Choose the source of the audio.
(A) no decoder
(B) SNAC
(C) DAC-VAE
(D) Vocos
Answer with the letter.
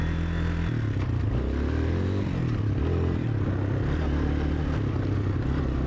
A